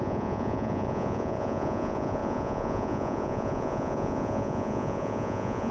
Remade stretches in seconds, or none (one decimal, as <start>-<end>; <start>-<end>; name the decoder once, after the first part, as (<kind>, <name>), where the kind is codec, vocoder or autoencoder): 0.0-5.7 (vocoder, Vocos)